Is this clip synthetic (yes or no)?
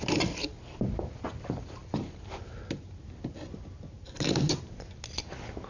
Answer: no